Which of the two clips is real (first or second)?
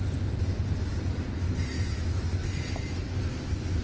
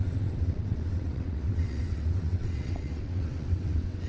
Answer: first